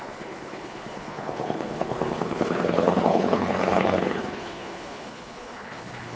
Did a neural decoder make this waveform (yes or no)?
yes